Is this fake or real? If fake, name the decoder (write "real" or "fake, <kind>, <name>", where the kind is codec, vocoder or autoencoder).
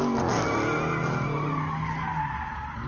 real